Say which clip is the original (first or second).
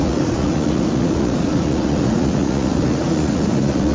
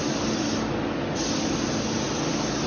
second